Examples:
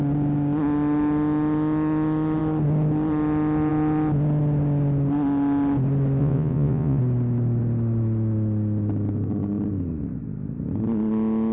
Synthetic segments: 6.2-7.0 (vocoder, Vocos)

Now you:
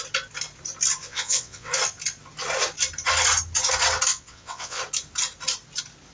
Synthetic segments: 1.0-1.7 (vocoder, WaveNeXt); 4.1-4.8

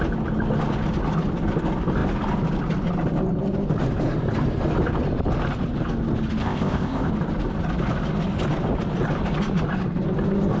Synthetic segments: 6.4-7.1 (codec, ZipCodec)

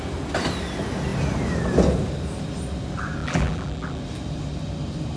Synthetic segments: 3.2-4.0 (vocoder, BigVGAN v2)

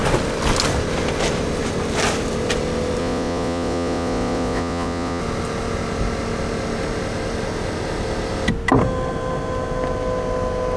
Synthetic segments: 3.0-5.2 (vocoder, Vocos)

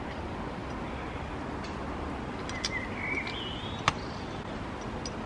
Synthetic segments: none